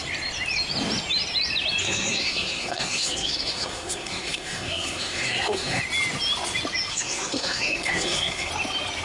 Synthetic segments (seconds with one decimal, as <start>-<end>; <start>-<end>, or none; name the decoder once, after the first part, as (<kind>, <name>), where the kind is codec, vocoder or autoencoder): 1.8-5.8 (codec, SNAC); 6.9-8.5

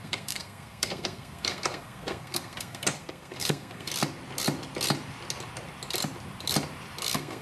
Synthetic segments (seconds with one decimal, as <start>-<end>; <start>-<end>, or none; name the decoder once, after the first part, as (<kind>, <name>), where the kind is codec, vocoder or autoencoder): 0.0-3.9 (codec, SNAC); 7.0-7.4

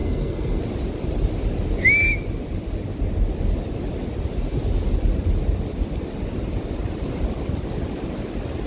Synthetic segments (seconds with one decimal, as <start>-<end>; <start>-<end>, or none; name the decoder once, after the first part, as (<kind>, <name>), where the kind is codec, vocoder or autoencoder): 0.0-0.6 (codec, SNAC)

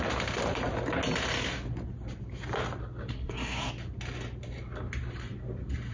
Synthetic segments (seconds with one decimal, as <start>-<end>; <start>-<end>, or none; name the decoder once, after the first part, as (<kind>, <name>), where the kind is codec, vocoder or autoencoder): 3.1-3.7 (codec, SNAC)

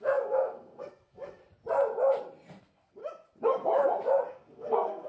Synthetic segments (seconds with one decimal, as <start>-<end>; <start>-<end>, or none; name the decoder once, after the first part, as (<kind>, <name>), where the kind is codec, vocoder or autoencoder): 0.0-1.4 (codec, SNAC); 2.6-3.0; 4.3-5.1